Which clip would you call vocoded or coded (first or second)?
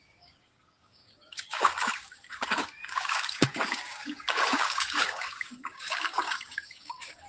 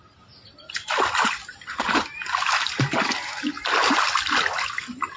first